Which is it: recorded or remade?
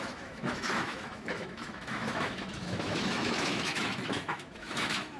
remade